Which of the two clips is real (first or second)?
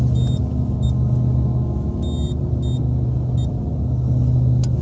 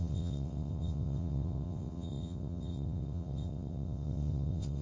first